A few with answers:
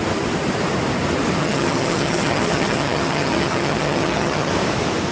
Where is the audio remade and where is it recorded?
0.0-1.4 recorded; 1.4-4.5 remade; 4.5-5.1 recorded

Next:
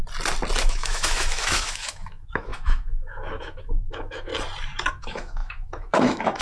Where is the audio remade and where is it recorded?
0.0-0.6 recorded; 0.6-4.3 remade; 4.3-4.9 recorded; 4.9-6.4 remade

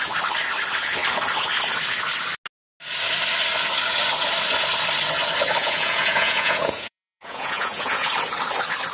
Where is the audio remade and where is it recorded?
0.0-5.6 recorded; 5.6-8.1 remade; 8.1-8.9 recorded

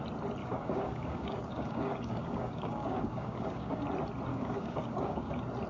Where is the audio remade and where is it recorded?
0.0-0.4 recorded; 0.4-3.8 remade; 3.8-4.3 recorded; 4.3-5.3 remade; 5.3-5.7 recorded